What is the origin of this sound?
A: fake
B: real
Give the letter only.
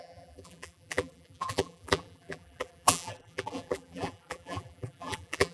A